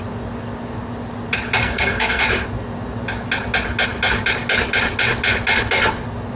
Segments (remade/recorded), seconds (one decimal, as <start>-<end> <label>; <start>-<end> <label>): 0.0-1.6 recorded; 1.6-2.2 remade; 2.2-6.4 recorded